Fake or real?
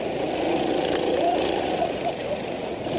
fake